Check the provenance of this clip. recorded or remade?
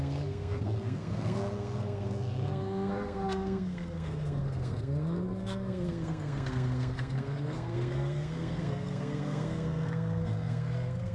remade